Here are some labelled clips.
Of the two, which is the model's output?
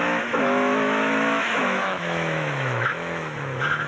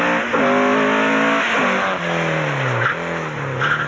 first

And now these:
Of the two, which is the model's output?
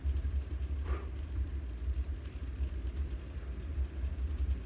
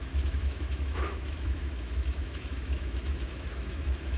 second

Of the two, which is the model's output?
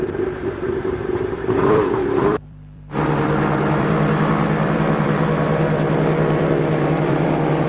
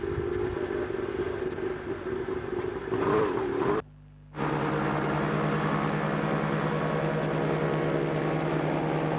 first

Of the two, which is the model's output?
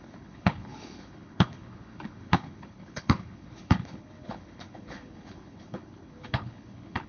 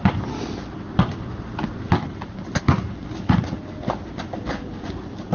first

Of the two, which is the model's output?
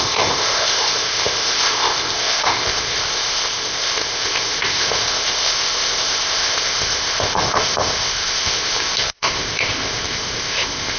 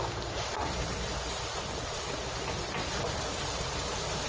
first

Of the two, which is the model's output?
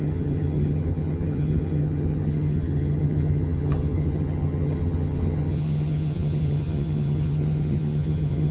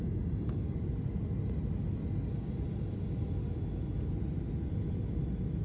first